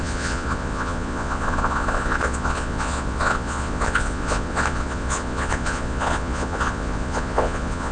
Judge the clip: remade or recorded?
remade